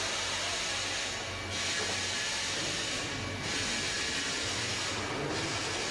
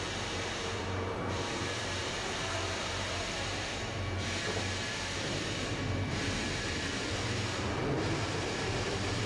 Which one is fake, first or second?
second